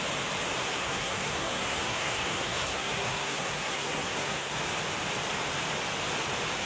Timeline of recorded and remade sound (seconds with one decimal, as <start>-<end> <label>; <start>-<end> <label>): 0.0-0.6 recorded; 0.6-4.6 remade; 4.6-6.7 recorded